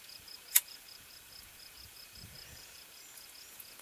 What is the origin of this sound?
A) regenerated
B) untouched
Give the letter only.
A